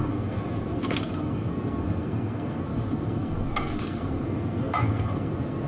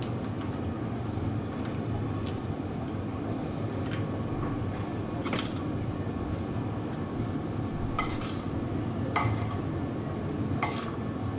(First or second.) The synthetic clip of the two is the first